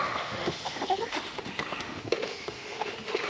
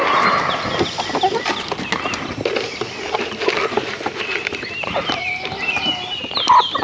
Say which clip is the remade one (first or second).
first